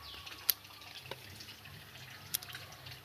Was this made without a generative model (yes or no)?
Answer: yes